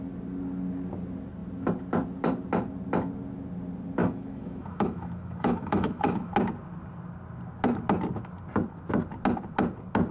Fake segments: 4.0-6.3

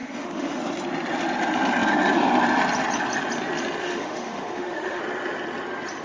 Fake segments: 0.0-0.6; 3.8-5.0

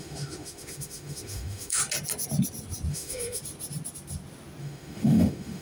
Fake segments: 0.0-1.8; 2.9-3.4; 4.6-5.6